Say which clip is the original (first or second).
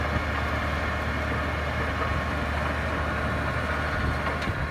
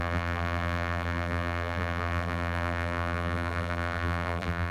first